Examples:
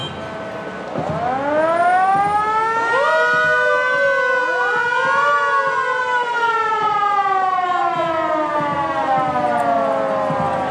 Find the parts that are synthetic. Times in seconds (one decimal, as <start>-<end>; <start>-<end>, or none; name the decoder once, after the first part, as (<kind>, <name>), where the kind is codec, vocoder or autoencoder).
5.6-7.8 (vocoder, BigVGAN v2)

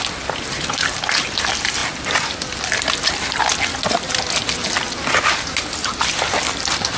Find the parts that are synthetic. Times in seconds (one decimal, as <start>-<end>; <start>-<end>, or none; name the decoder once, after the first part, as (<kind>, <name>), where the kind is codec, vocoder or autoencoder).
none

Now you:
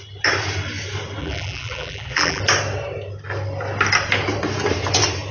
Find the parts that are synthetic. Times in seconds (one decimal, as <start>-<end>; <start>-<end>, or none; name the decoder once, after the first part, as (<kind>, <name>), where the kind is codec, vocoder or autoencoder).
1.2-2.4 (vocoder, BigVGAN v2)

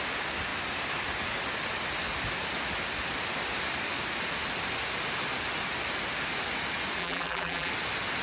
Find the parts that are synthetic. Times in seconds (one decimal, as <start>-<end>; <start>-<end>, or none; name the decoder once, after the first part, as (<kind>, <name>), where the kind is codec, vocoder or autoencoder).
7.0-7.7 (vocoder, BigVGAN v2)

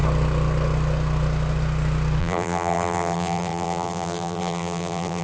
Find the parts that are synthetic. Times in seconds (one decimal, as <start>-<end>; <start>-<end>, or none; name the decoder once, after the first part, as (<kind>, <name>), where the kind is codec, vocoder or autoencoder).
2.2-5.2 (vocoder, BigVGAN v2)

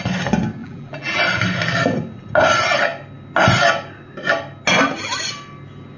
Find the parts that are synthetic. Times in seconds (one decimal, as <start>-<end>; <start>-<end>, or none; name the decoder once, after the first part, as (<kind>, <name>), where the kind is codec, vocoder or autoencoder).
0.6-1.2 (vocoder, BigVGAN v2)